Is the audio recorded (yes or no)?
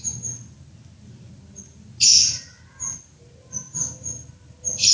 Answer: yes